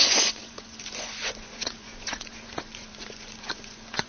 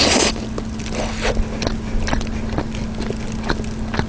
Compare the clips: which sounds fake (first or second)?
first